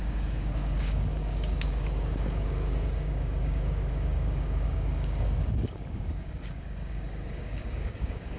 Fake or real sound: fake